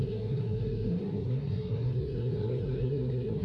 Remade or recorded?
remade